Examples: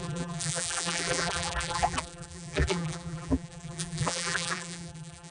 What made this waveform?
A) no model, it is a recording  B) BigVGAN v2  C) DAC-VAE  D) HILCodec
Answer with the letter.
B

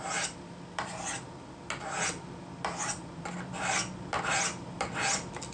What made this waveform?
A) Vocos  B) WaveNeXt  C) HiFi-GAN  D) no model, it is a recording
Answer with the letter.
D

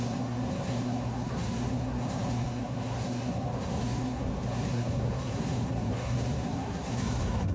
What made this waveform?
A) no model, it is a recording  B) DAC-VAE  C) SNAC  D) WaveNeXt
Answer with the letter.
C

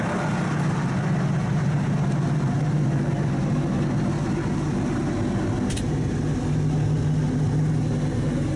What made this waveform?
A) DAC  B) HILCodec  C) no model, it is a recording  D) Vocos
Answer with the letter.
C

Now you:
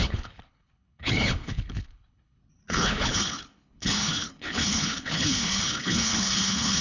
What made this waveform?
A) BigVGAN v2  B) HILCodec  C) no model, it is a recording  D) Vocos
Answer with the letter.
B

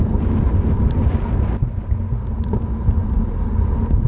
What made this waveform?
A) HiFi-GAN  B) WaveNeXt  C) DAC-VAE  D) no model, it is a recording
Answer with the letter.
D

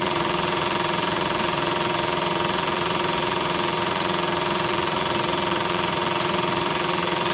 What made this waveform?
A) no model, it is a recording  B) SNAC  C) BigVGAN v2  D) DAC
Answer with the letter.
C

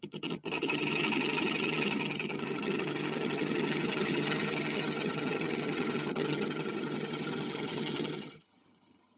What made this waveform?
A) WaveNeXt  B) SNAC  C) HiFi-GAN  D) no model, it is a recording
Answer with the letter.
C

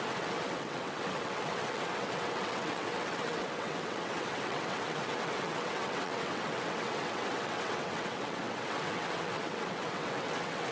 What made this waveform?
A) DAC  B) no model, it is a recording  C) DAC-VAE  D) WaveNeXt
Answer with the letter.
D